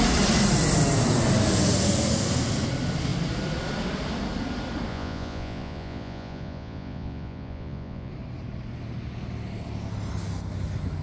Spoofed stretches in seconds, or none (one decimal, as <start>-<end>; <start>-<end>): 4.9-8.1